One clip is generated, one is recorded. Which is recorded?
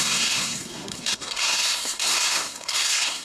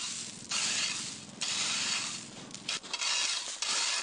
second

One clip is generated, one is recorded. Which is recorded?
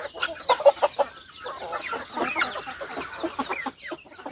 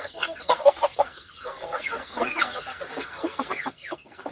first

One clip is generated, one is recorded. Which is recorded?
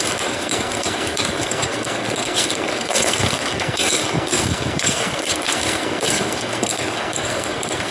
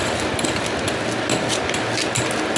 second